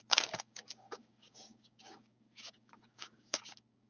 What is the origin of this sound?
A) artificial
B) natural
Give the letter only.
A